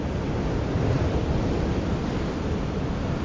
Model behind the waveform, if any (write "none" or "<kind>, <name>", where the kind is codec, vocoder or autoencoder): none